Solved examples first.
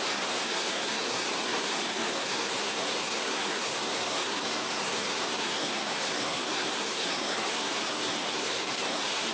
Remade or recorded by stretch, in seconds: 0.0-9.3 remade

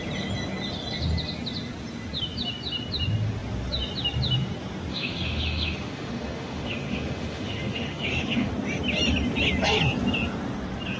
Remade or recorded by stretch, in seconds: 0.0-4.9 recorded; 4.9-8.5 remade; 8.5-11.0 recorded

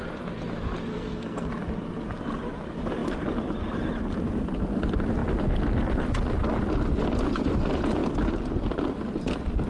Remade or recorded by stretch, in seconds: 0.0-0.9 recorded; 0.9-1.5 remade; 1.5-9.7 recorded

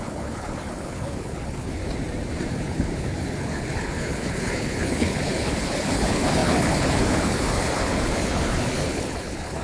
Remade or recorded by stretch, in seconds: 0.0-1.8 remade; 1.8-2.5 recorded; 2.5-9.6 remade

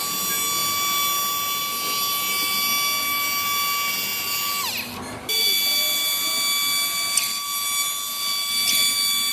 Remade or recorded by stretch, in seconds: 0.0-9.3 recorded

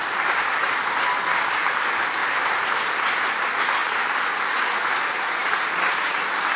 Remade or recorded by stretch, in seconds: 0.0-0.8 remade; 0.8-2.2 recorded; 2.2-2.9 remade; 2.9-3.8 recorded; 3.8-5.0 remade; 5.0-6.6 recorded